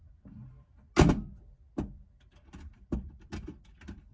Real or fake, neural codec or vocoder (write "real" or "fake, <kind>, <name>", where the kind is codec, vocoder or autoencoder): real